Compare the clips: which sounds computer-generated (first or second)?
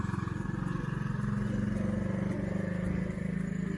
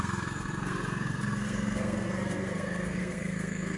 second